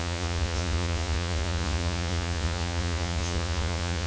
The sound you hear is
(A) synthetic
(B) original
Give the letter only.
A